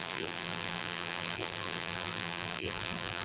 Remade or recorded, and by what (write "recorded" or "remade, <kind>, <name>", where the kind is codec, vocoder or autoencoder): remade, vocoder, BigVGAN v2